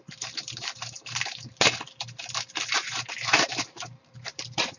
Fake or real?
fake